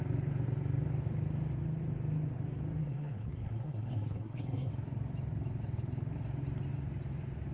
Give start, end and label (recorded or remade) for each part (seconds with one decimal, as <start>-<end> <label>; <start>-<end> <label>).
0.0-2.8 recorded; 2.8-4.7 remade; 4.7-7.5 recorded